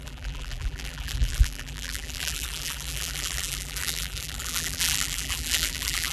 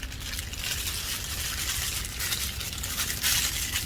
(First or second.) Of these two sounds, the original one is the second